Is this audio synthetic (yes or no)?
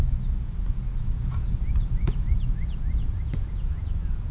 yes